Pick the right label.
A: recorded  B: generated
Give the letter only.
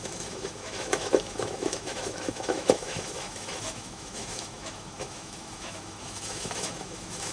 B